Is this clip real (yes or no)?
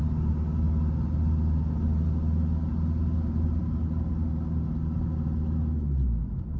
yes